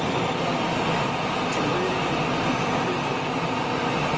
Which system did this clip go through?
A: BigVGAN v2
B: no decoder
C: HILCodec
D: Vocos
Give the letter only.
B